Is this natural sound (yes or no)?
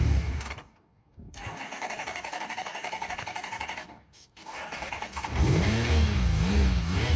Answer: no